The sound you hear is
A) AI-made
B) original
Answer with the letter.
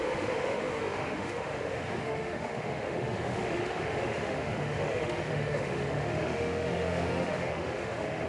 A